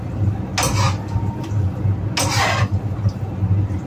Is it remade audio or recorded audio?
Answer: recorded